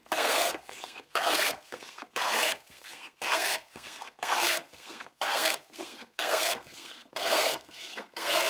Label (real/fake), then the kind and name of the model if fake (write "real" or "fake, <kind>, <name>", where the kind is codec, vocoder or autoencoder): fake, codec, SNAC